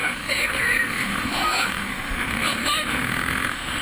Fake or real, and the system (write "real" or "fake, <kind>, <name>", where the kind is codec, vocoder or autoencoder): fake, autoencoder, DAC-VAE